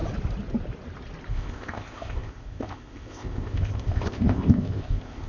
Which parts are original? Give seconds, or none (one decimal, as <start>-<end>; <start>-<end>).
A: 0.0-1.3